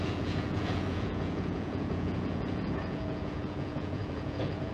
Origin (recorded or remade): remade